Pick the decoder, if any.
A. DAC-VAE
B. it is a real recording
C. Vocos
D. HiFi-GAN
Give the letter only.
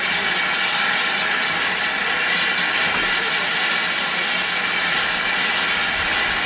B